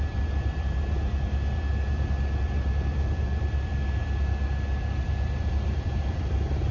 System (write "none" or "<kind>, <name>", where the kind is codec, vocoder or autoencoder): vocoder, BigVGAN v2